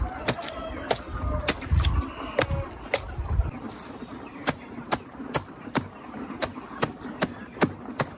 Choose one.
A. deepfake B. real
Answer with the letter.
B